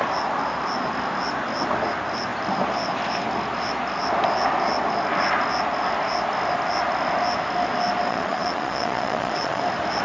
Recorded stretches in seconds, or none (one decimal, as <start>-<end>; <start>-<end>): 0.0-8.1; 9.6-10.0